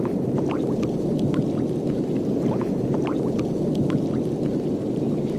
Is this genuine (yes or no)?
yes